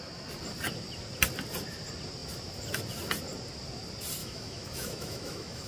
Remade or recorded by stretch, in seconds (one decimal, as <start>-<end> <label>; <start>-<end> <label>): 0.0-4.2 recorded; 4.2-5.7 remade